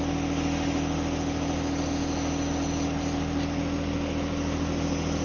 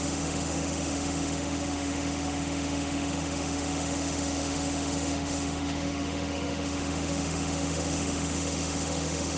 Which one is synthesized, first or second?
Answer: second